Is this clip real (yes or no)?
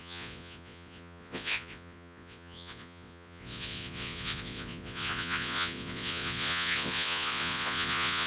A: no